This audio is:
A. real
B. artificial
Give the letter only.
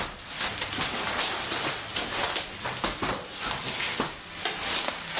A